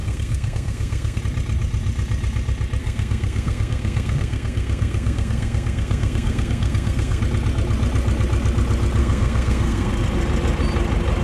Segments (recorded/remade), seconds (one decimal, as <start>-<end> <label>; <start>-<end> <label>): 0.0-1.2 remade; 1.2-2.8 recorded; 2.8-7.2 remade; 7.2-9.0 recorded; 9.0-9.9 remade; 9.9-11.2 recorded